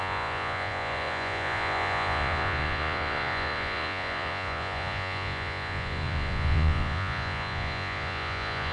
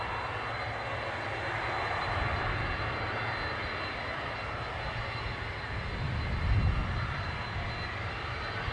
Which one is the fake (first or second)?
first